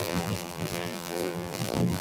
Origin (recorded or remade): remade